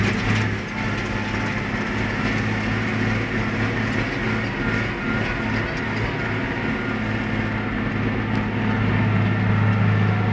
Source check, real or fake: real